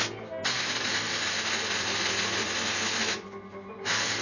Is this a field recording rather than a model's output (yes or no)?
yes